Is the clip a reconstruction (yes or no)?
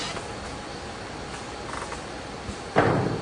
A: no